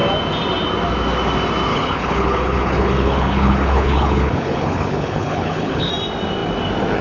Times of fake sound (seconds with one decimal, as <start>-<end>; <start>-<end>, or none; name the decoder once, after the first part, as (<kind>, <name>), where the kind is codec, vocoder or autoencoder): 1.7-5.9 (codec, HILCodec)